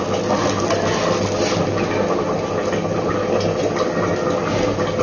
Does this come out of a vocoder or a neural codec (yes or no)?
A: no